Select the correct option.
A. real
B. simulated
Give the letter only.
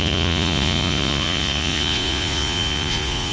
B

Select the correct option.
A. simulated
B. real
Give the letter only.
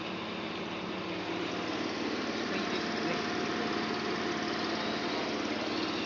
B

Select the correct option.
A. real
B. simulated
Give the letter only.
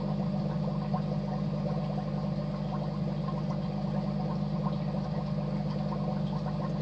A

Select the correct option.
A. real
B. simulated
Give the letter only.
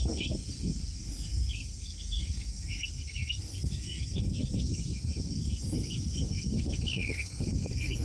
B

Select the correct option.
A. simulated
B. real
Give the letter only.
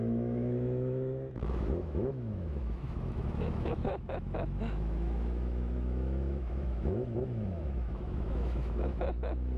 A